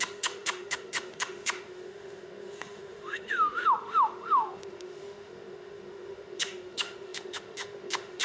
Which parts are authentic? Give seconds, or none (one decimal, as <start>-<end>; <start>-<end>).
none